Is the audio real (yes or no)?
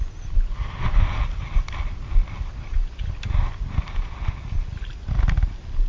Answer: yes